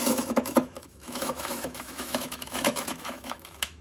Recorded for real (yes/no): no